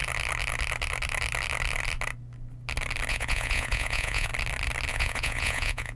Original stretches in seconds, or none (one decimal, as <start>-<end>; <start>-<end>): 0.0-3.1; 4.3-4.9